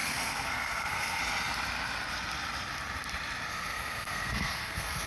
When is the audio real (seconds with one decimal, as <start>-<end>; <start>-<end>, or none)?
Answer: 1.2-3.5